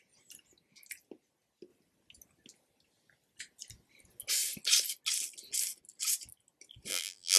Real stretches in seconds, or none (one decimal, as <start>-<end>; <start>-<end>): 0.0-6.9